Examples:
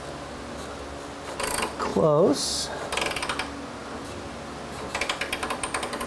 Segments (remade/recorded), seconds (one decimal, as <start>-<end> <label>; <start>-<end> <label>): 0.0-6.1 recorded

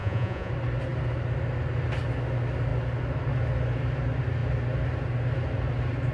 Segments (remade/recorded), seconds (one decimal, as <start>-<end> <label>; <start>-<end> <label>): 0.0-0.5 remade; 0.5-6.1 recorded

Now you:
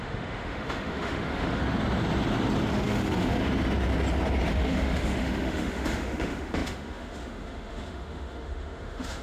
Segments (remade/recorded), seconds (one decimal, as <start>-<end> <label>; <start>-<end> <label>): 0.0-1.6 remade; 1.6-2.7 recorded; 2.7-3.4 remade; 3.4-4.5 recorded; 4.5-9.2 remade

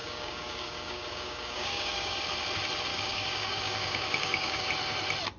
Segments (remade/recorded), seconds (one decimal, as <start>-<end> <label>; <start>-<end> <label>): 0.0-2.2 remade; 2.2-2.9 recorded; 2.9-4.6 remade; 4.6-5.4 recorded